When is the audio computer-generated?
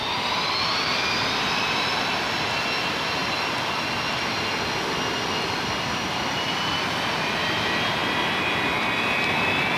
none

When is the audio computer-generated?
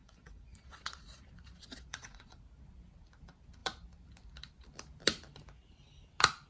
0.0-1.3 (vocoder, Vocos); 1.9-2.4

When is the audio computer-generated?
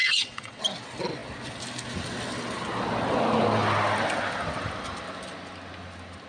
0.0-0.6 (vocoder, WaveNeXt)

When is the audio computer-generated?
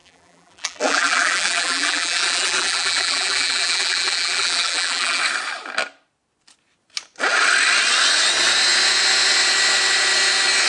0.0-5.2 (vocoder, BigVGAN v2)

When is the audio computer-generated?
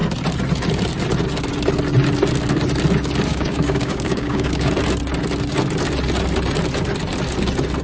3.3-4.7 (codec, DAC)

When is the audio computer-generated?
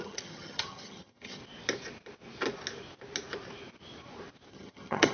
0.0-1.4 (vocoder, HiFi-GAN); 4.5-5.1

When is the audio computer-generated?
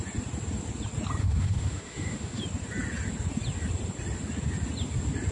1.2-2.4 (autoencoder, DAC-VAE)